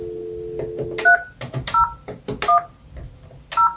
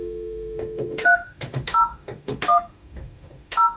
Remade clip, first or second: second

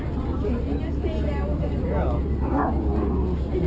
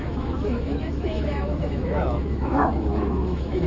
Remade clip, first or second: second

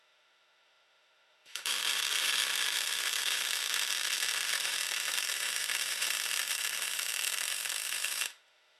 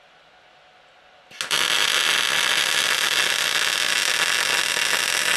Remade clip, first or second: first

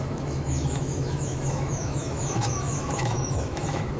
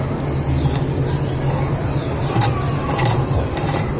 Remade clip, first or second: first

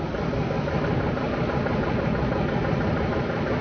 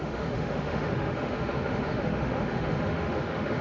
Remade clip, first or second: second